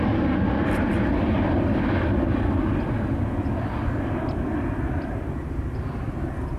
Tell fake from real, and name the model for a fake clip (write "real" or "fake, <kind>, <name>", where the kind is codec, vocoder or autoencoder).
fake, vocoder, BigVGAN v2